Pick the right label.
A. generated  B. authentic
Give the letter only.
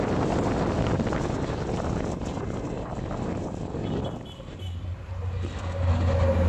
B